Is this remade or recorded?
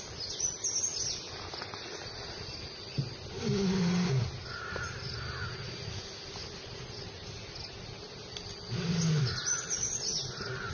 recorded